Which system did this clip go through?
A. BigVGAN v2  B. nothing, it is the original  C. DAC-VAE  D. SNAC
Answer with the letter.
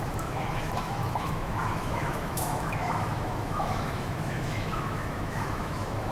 C